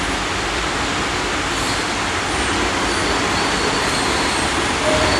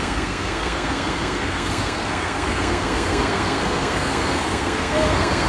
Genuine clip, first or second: first